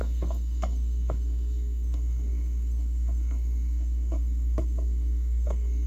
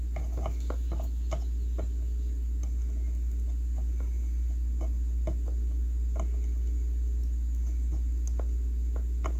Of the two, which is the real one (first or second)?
second